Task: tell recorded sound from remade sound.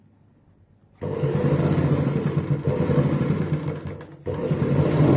recorded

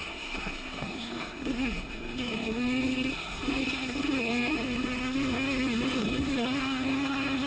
remade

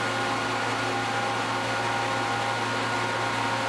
recorded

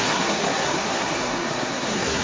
remade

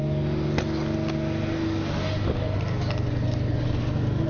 recorded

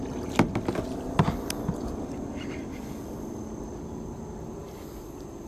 recorded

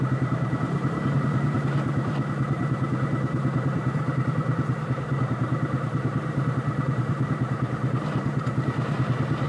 remade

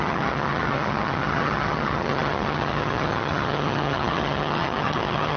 remade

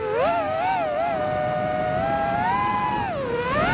recorded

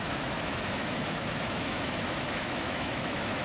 remade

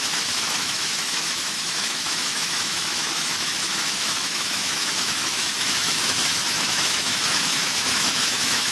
remade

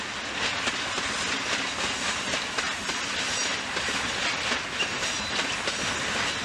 recorded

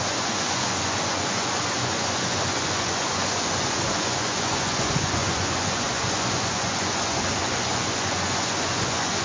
remade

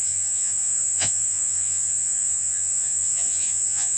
remade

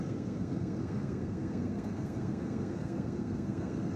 remade